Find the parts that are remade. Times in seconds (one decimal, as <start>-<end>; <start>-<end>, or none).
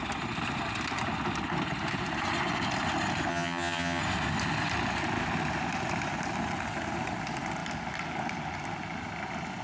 3.3-4.0